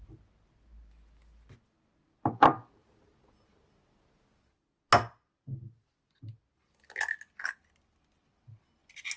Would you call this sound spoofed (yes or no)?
no